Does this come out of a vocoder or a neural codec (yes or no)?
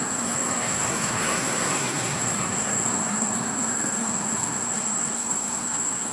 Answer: yes